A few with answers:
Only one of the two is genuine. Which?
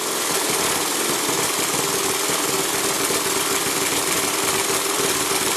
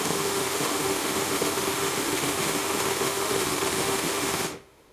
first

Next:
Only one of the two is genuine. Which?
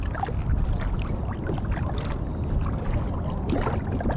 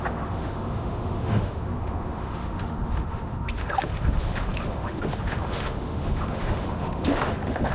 first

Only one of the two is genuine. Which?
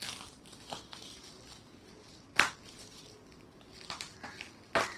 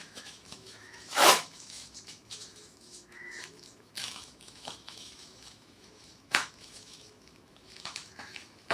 first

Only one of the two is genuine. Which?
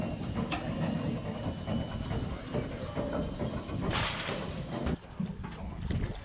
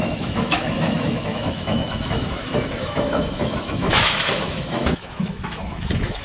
first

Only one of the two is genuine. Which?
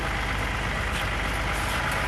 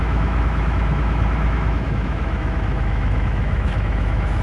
first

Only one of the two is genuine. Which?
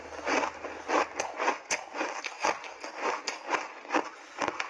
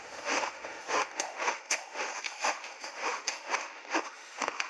first